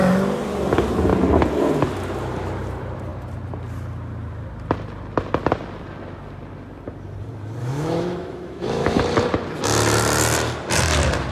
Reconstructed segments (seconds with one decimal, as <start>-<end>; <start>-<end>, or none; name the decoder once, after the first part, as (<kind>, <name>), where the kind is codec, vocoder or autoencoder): 7.6-9.0 (autoencoder, DAC-VAE)